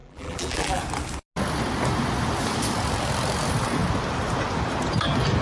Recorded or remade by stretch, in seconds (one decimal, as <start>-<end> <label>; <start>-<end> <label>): 0.0-0.8 remade; 0.8-5.4 recorded